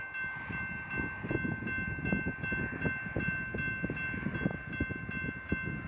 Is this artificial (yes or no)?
no